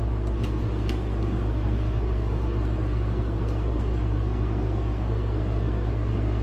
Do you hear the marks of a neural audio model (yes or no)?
yes